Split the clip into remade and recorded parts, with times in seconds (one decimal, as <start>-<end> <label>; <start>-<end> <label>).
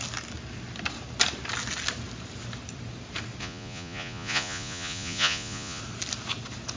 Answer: 0.0-3.4 recorded; 3.4-5.8 remade; 5.8-6.8 recorded